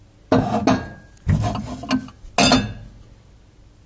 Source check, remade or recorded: recorded